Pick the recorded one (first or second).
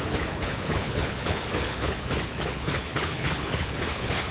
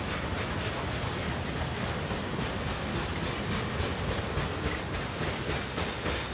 second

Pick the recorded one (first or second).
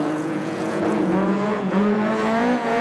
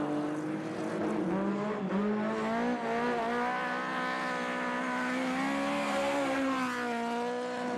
second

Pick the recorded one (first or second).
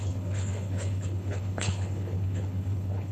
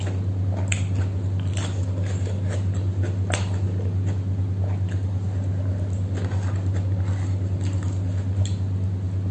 second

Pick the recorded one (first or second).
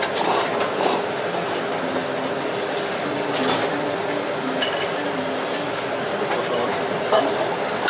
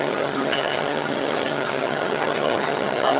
first